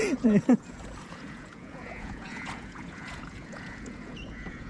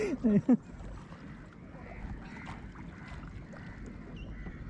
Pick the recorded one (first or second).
second